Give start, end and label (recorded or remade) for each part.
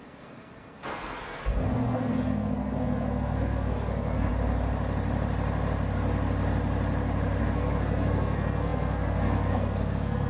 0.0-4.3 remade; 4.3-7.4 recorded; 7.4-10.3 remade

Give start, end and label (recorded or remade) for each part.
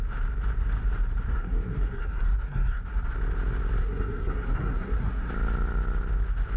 0.0-1.3 recorded; 1.3-2.8 remade; 2.8-3.8 recorded; 3.8-5.3 remade; 5.3-6.6 recorded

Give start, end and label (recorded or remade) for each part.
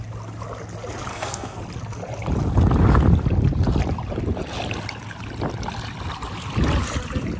0.0-1.1 recorded; 1.1-1.6 remade; 1.6-7.4 recorded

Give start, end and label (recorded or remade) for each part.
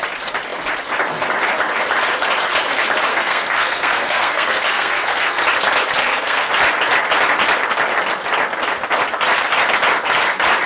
0.0-3.1 recorded; 3.1-5.4 remade; 5.4-6.0 recorded; 6.0-6.5 remade; 6.5-10.7 recorded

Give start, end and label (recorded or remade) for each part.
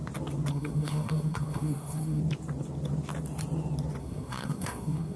0.0-0.5 recorded; 0.5-2.2 remade; 2.2-4.0 recorded; 4.0-5.2 remade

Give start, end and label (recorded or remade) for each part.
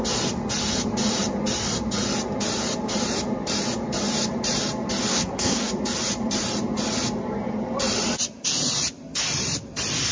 0.0-5.1 recorded; 5.1-5.7 remade; 5.7-10.1 recorded